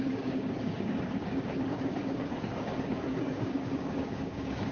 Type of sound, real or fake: fake